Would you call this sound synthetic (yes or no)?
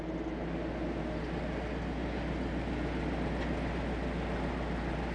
no